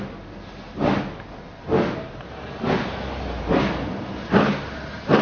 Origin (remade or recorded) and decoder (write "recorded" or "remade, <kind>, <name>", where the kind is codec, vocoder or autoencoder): recorded